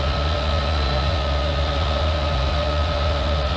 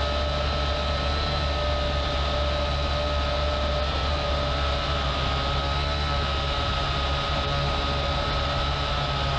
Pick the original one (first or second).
second